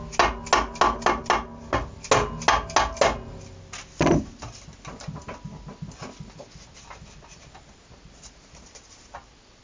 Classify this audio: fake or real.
real